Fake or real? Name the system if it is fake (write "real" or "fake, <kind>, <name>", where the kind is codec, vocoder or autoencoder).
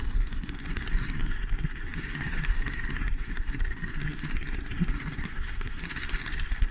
fake, codec, SNAC